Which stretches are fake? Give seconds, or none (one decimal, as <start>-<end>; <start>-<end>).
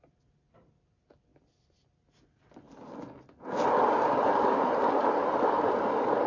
none